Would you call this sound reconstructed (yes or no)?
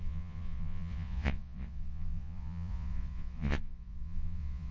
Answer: yes